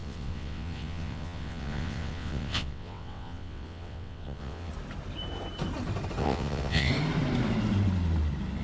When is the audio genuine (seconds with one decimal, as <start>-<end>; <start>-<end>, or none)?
4.7-6.2; 6.9-8.6